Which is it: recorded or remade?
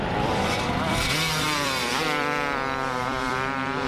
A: remade